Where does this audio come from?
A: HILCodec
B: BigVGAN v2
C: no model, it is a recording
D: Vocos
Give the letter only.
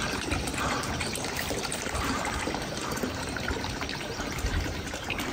B